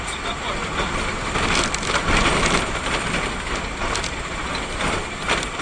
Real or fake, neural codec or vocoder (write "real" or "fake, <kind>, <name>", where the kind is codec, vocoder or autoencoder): real